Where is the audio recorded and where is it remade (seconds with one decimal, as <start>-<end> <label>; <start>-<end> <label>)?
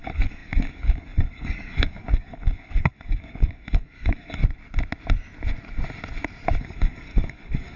0.0-4.4 remade; 4.4-6.6 recorded; 6.6-7.8 remade